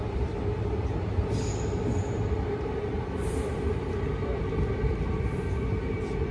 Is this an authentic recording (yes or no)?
yes